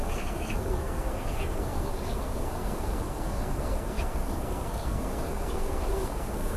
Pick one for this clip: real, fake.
fake